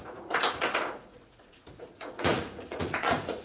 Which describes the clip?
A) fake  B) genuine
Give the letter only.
A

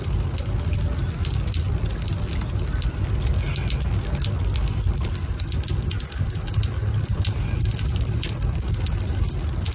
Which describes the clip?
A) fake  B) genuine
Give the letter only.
B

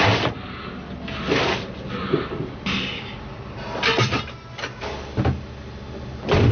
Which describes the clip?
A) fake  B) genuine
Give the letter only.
B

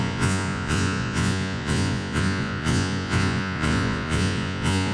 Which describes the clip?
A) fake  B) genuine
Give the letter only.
A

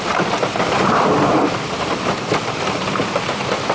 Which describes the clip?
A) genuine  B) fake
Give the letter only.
B